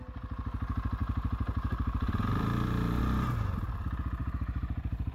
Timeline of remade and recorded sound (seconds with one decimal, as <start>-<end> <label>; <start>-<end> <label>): 0.0-1.0 recorded; 1.0-3.0 remade; 3.0-4.2 recorded; 4.2-5.1 remade